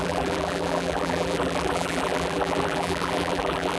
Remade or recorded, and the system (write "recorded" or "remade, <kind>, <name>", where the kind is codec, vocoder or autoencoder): remade, vocoder, BigVGAN v2